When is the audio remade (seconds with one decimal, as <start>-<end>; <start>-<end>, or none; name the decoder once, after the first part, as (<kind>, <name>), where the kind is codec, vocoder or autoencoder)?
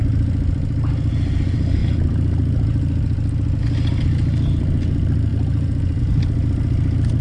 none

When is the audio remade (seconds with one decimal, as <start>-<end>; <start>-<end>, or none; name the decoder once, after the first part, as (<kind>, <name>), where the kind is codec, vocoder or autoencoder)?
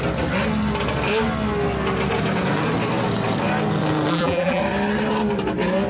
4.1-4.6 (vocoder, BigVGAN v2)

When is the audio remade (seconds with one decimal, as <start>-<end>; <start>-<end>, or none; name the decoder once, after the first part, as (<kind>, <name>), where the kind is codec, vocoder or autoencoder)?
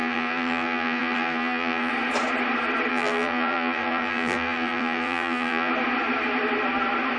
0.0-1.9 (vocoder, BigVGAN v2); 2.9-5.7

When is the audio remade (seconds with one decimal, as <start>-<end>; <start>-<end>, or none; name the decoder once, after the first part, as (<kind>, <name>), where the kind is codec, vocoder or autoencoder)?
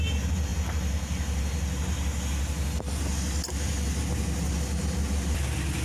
none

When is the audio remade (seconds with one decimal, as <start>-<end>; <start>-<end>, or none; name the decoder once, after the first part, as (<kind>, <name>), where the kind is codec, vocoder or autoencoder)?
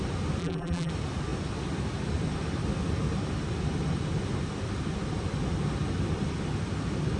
0.4-0.9 (vocoder, BigVGAN v2)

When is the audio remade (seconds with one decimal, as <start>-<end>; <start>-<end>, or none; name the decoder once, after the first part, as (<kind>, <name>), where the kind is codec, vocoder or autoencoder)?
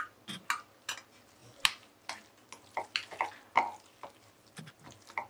none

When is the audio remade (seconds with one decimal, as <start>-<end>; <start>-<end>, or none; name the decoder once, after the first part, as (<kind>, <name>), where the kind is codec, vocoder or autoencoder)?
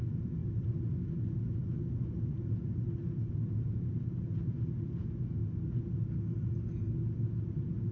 none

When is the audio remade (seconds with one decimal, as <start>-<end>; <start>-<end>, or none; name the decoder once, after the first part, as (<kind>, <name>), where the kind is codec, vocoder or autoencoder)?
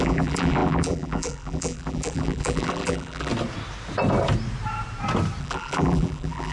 0.0-3.3 (vocoder, BigVGAN v2); 5.4-6.5